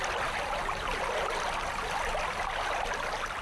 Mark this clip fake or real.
real